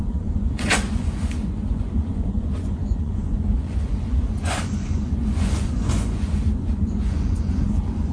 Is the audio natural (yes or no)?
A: no